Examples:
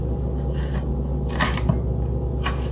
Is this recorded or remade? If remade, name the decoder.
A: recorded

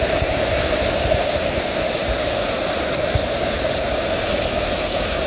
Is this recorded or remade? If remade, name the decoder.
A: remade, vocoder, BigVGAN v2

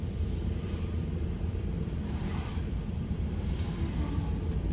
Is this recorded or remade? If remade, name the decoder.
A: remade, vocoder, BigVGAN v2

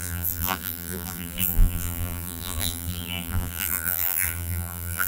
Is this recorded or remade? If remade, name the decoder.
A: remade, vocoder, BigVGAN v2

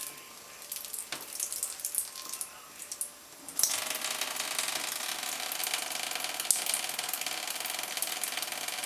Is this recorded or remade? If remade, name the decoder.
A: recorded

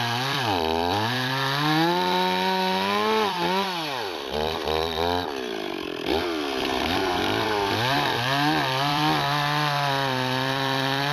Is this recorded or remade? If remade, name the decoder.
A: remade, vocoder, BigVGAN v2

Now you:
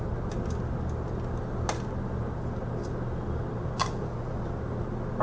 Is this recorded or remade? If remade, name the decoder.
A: recorded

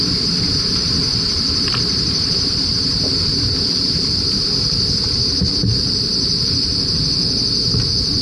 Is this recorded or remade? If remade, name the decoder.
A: remade, vocoder, BigVGAN v2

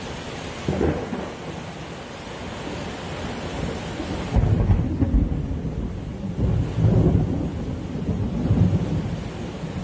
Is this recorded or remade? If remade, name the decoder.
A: recorded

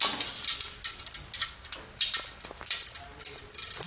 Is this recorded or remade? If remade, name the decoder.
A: recorded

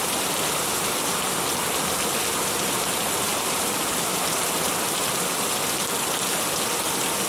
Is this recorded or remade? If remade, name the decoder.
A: remade, vocoder, BigVGAN v2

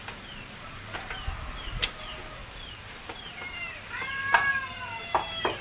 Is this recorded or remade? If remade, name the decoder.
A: remade, vocoder, BigVGAN v2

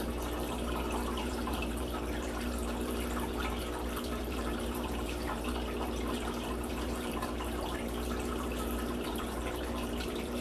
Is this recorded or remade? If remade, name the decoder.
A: remade, vocoder, BigVGAN v2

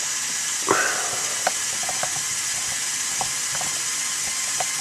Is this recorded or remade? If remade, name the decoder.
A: recorded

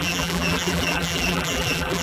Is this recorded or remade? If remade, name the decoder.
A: remade, vocoder, BigVGAN v2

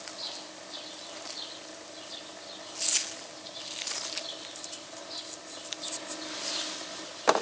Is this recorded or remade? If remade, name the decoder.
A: recorded